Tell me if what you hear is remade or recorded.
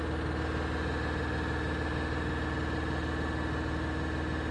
recorded